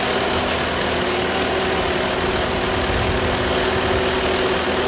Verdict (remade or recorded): recorded